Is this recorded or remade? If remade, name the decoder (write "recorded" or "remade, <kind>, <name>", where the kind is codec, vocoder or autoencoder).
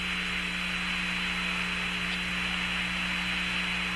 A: recorded